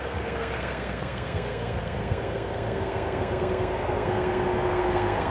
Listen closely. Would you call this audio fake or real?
fake